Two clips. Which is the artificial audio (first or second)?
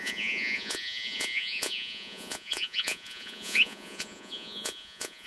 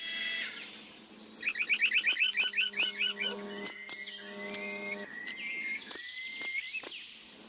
first